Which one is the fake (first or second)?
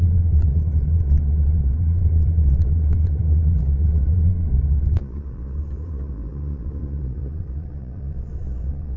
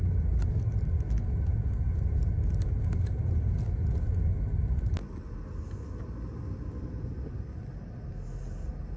first